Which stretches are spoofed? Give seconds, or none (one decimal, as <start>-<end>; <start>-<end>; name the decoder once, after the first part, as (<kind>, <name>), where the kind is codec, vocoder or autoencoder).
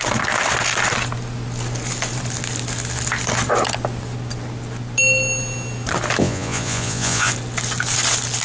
6.2-7.3 (vocoder, Vocos)